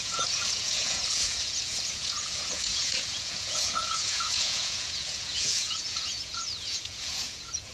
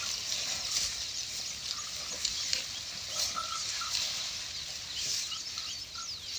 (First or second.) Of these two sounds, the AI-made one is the first